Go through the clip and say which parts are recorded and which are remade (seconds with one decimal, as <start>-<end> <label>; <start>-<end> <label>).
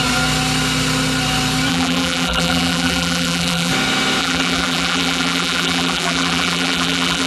0.0-1.7 recorded; 1.7-3.7 remade; 3.7-4.2 recorded; 4.2-7.3 remade